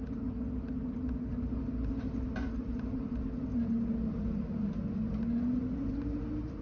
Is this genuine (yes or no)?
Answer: yes